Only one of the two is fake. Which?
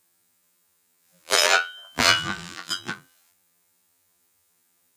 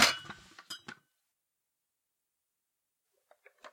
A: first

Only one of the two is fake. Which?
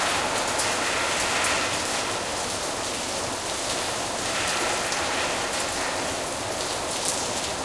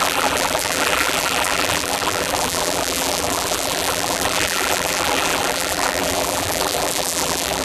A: second